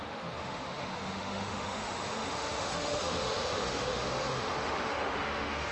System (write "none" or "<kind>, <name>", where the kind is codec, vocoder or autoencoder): autoencoder, DAC-VAE